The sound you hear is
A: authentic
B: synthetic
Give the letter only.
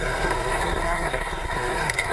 B